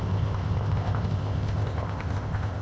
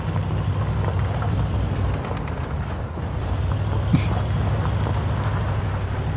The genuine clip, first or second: second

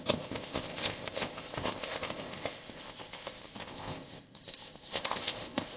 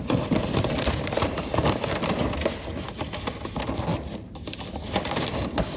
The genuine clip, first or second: second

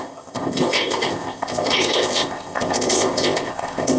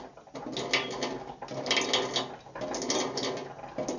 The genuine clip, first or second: second